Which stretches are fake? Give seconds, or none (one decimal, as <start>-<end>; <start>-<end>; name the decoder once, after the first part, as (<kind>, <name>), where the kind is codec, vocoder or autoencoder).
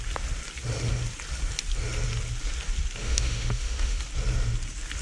3.0-4.0 (autoencoder, DAC-VAE)